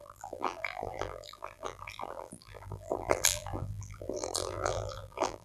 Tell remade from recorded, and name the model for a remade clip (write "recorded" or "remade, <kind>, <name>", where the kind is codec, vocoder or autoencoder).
remade, vocoder, BigVGAN v2